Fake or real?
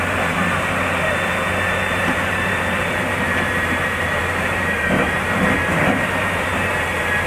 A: fake